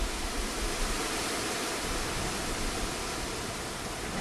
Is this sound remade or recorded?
recorded